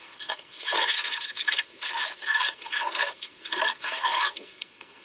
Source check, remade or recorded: remade